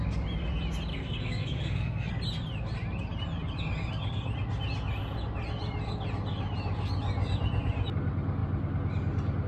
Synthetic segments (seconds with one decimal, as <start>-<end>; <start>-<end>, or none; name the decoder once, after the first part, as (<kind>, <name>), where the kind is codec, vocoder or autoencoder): 0.9-2.1 (codec, SNAC)